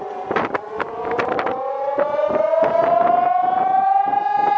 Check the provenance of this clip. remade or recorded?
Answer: recorded